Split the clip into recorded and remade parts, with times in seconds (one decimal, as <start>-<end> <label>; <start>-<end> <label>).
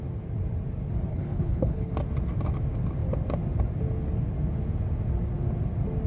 0.0-1.1 recorded; 1.1-1.9 remade; 1.9-6.1 recorded